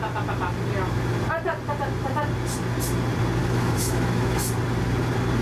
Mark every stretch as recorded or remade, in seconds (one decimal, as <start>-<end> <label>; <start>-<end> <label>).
0.0-3.4 recorded; 3.4-4.5 remade; 4.5-5.4 recorded

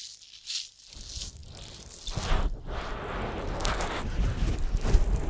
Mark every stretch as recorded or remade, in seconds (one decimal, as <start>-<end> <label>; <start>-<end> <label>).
0.0-5.3 recorded